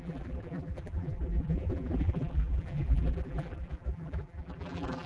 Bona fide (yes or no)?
no